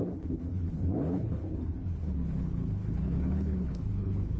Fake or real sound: fake